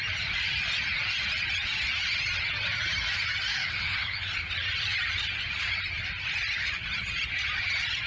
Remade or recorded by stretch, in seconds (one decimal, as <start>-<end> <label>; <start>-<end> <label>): 0.0-3.6 recorded; 3.6-4.3 remade; 4.3-8.1 recorded